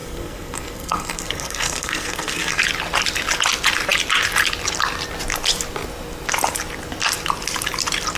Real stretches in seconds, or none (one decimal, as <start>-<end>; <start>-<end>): 2.6-8.2